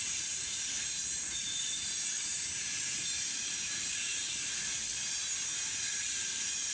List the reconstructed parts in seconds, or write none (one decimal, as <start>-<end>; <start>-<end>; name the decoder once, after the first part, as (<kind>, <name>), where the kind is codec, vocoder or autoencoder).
0.0-4.9 (vocoder, BigVGAN v2); 5.7-6.7